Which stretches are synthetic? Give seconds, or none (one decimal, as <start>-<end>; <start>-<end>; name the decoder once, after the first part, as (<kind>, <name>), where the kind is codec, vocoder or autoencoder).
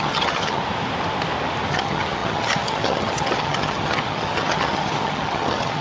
0.0-0.6 (vocoder, HiFi-GAN); 1.7-5.8